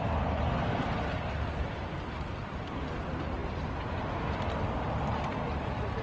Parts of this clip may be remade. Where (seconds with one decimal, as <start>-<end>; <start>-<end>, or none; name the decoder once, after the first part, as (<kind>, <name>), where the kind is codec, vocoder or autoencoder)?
none

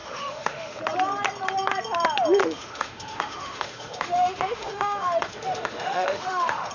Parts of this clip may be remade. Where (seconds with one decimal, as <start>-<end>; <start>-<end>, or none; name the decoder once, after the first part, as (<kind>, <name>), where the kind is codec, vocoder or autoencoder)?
0.0-0.8 (autoencoder, DAC-VAE); 2.4-6.7

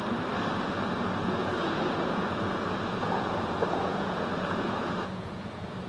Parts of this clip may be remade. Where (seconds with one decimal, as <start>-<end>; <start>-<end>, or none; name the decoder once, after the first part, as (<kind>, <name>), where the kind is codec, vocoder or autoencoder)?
0.7-5.9 (vocoder, Vocos)

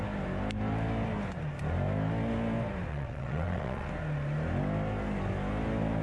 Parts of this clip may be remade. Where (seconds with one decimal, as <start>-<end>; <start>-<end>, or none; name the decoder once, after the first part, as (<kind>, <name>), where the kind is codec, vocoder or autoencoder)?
2.9-3.9 (vocoder, WaveNeXt)

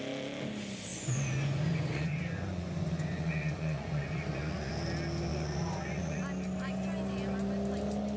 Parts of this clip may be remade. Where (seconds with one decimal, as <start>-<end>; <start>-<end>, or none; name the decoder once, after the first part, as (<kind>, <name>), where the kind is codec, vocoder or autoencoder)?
0.9-4.7 (vocoder, Vocos); 5.3-6.2

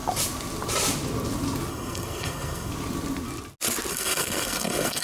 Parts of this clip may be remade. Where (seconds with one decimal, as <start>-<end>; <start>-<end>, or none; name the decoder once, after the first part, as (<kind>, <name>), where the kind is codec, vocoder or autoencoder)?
1.7-2.7 (codec, SNAC); 3.9-5.0